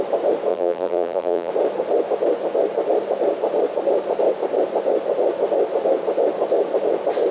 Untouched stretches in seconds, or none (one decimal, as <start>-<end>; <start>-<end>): 0.0-0.5; 1.5-7.3

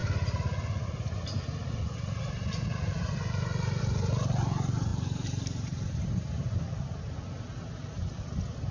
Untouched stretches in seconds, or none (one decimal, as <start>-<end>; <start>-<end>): 0.0-4.9; 7.0-8.7